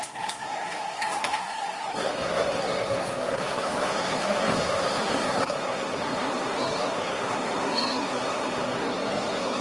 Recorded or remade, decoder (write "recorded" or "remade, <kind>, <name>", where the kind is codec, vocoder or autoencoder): remade, codec, SNAC